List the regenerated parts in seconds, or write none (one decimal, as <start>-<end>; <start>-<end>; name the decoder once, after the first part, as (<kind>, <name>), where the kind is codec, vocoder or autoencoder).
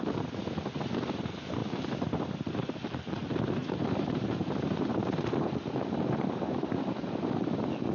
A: 1.6-3.2 (vocoder, BigVGAN v2); 3.6-6.8